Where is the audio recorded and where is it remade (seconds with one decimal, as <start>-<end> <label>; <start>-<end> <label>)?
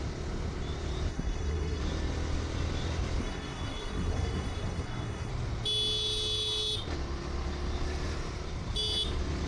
0.0-1.1 recorded; 1.1-1.8 remade; 1.8-3.2 recorded; 3.2-5.3 remade; 5.3-9.5 recorded